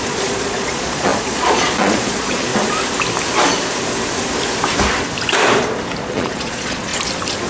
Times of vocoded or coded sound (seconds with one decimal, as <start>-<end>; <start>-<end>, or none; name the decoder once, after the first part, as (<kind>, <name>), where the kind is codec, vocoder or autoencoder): 0.0-2.5 (vocoder, Vocos); 6.0-6.9